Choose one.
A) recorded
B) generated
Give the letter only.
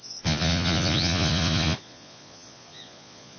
B